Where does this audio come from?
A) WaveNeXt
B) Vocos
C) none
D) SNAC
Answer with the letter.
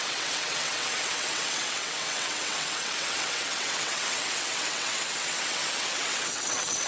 A